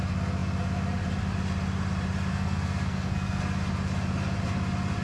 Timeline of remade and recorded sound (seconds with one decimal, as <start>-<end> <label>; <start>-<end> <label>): 0.0-2.3 recorded; 2.3-3.4 remade; 3.4-5.0 recorded